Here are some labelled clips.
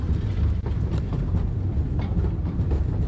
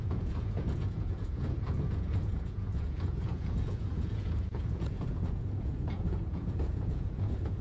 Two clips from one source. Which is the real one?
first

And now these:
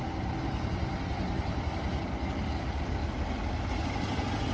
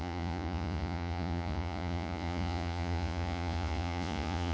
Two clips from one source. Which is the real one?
first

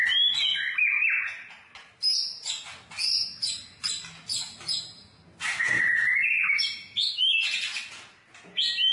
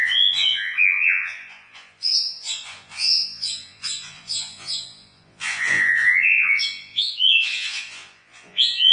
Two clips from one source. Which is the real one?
first